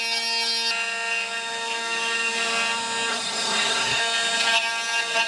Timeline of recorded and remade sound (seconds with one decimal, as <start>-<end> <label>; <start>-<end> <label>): 0.0-3.1 recorded; 3.1-4.0 remade; 4.0-5.3 recorded